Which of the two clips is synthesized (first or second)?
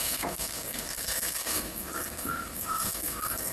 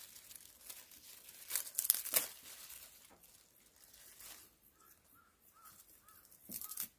first